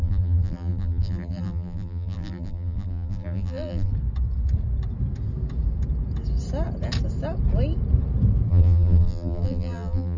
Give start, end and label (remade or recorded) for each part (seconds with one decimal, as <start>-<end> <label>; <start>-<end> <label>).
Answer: 0.0-3.9 remade; 3.9-8.5 recorded; 8.5-10.2 remade

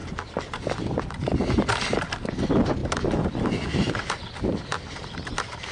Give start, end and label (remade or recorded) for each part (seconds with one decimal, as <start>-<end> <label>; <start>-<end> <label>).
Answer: 0.0-0.8 remade; 0.8-2.8 recorded; 2.8-3.8 remade; 3.8-5.7 recorded

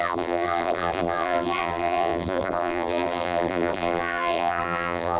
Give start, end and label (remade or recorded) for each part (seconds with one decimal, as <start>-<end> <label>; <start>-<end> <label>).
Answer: 0.0-5.2 remade

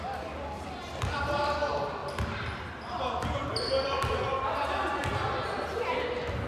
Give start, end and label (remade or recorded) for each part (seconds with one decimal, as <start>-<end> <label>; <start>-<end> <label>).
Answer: 0.0-3.4 recorded; 3.4-4.3 remade; 4.3-6.5 recorded

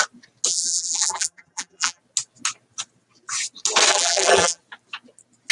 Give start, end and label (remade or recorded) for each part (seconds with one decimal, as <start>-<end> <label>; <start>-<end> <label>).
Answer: 0.0-0.5 recorded; 0.5-2.0 remade; 2.0-3.9 recorded; 3.9-4.6 remade; 4.6-5.5 recorded